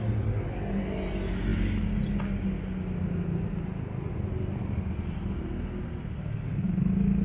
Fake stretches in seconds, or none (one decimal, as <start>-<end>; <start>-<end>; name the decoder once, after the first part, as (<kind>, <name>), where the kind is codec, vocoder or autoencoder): none